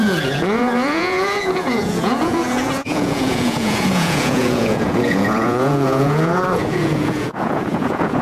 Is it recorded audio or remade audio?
remade